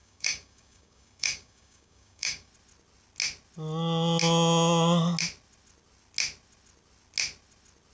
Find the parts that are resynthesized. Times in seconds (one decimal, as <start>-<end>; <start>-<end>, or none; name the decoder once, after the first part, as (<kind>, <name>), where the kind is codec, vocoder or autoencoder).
0.0-2.5 (codec, DAC)